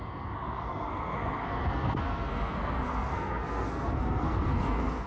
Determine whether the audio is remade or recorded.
remade